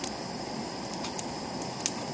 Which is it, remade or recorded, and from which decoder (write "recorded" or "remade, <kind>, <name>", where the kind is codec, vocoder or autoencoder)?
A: recorded